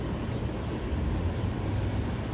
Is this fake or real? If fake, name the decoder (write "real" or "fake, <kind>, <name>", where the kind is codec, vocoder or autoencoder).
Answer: real